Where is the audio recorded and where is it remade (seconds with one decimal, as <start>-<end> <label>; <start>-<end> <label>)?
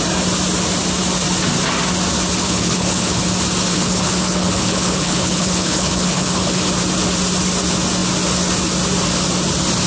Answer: 0.0-2.4 recorded; 2.4-3.2 remade; 3.2-3.7 recorded; 3.7-6.7 remade; 6.7-9.9 recorded